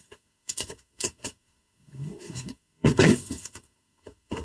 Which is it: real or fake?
fake